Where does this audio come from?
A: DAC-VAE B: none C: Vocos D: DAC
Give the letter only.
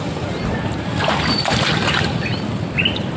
B